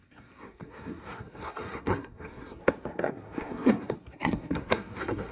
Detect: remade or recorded remade